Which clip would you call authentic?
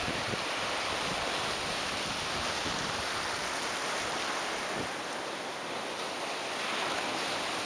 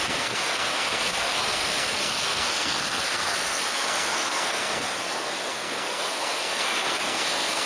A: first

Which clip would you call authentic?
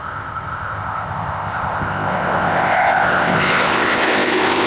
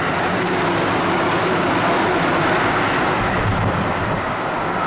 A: second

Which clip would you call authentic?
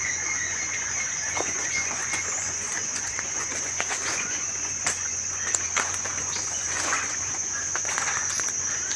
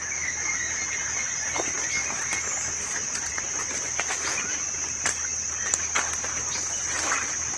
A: second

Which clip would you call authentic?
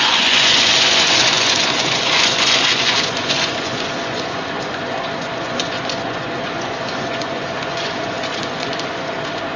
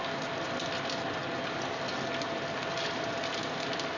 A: second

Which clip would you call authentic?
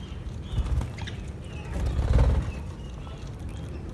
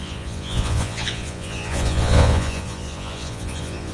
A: first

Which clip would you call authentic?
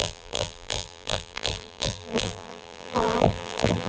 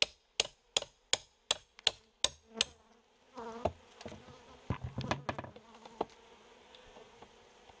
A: second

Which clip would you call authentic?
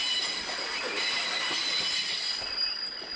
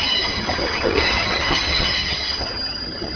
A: first